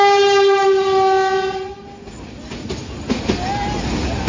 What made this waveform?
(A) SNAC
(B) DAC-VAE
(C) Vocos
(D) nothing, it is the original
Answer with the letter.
D